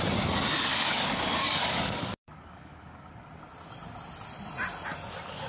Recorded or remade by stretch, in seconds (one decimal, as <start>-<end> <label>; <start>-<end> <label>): 0.0-0.7 recorded; 0.7-3.1 remade; 3.1-5.5 recorded